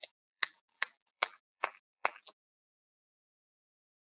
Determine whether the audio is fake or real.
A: fake